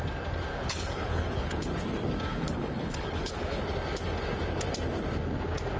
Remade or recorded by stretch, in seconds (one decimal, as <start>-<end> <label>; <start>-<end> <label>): 0.0-0.5 recorded; 0.5-1.7 remade; 1.7-2.3 recorded; 2.3-3.6 remade; 3.6-5.8 recorded